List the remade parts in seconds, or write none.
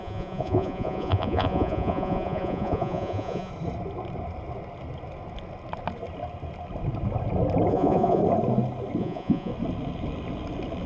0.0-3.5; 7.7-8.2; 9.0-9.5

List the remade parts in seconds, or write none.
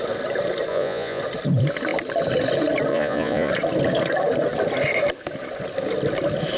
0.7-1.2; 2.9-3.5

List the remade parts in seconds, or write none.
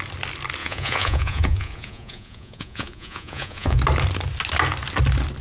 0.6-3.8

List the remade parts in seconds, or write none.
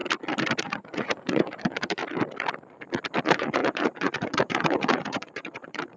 0.6-2.0; 3.2-6.0